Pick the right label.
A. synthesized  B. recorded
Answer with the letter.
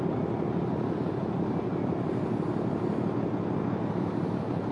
B